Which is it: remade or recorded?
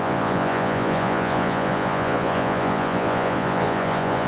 remade